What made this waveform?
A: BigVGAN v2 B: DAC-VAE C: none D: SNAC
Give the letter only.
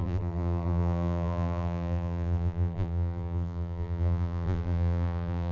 A